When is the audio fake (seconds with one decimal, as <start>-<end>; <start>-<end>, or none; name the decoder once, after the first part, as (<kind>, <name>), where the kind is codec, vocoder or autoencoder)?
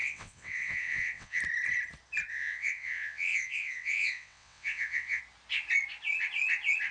0.0-1.4 (vocoder, WaveNeXt); 2.3-5.2